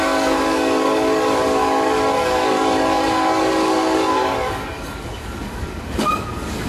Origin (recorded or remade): remade